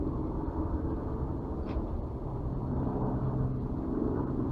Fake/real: fake